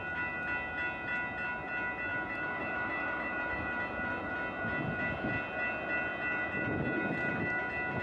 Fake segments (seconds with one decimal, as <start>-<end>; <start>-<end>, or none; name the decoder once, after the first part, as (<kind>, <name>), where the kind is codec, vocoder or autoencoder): 2.1-4.3 (vocoder, BigVGAN v2)